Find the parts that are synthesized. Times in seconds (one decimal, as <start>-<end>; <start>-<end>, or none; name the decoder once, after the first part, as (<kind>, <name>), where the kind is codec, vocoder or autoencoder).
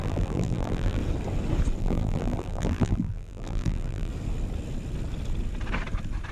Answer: 0.0-1.0 (vocoder, BigVGAN v2); 1.8-4.1